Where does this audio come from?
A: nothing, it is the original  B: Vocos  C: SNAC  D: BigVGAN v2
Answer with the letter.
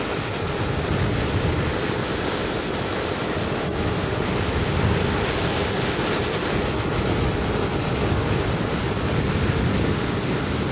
A